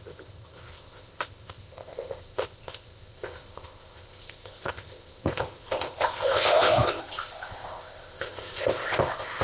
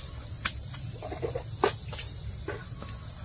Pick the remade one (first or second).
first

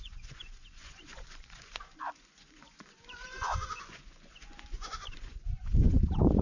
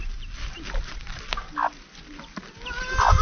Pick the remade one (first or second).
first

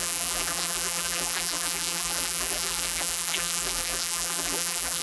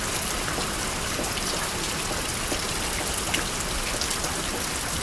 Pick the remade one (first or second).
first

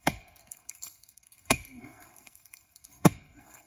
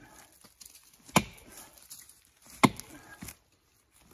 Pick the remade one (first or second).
first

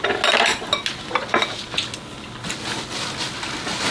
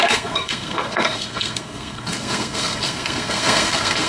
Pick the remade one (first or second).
second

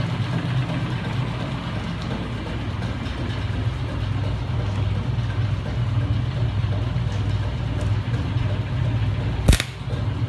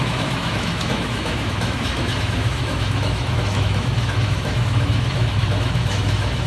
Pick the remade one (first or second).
second